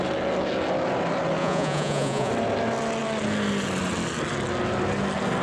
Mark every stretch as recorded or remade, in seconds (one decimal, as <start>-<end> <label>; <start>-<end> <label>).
0.0-1.4 recorded; 1.4-2.3 remade; 2.3-5.4 recorded